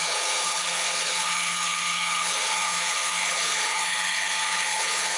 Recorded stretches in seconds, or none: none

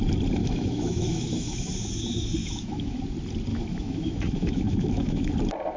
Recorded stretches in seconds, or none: 0.0-0.4; 1.7-2.4; 3.0-3.5; 5.3-5.8

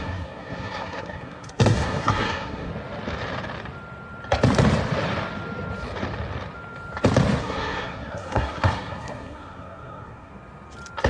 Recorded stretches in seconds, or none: 2.7-7.4; 10.3-11.1